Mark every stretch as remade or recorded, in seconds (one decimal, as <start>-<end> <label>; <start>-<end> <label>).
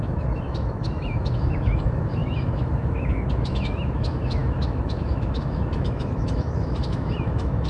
0.0-7.7 remade